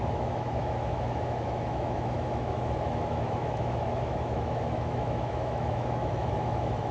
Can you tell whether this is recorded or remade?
remade